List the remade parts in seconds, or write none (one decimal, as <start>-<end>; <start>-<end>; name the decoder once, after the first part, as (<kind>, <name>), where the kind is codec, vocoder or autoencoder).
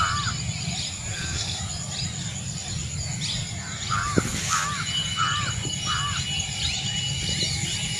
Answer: 1.1-1.6 (codec, SNAC)